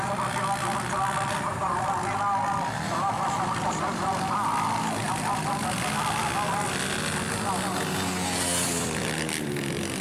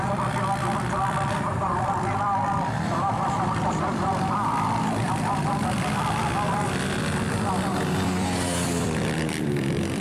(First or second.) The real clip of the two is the first